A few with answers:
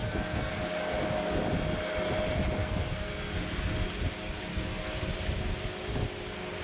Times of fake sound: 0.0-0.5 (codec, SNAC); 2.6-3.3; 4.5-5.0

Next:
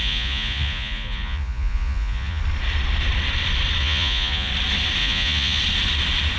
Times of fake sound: 0.0-2.4 (vocoder, Vocos); 3.8-4.5; 5.0-5.6

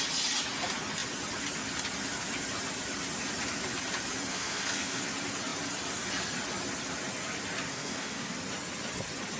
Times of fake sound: 4.3-5.0 (codec, SNAC); 7.7-8.3